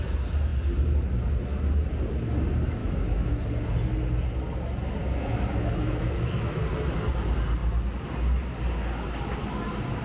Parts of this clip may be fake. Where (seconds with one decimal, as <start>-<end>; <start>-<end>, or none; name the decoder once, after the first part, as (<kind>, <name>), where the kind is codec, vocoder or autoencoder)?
2.8-3.4 (autoencoder, DAC-VAE); 5.0-6.6